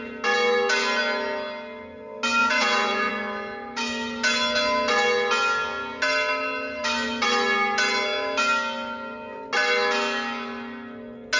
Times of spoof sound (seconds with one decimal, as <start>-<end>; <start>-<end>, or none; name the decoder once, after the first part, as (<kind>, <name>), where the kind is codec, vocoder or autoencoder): 2.4-3.1 (vocoder, Vocos)